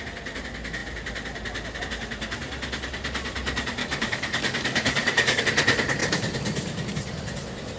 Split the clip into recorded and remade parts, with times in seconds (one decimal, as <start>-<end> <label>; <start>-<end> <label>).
0.0-3.8 recorded; 3.8-5.4 remade; 5.4-7.8 recorded